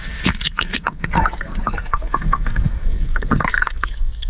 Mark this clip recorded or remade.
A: remade